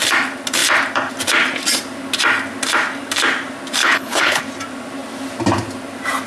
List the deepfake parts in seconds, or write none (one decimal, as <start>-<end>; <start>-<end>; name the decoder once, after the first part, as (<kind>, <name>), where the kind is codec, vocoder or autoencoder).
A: 3.8-4.4 (codec, HILCodec)